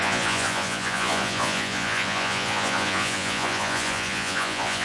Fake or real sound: fake